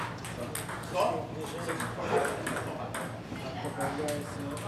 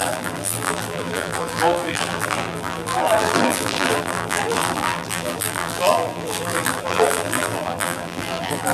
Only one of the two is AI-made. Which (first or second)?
second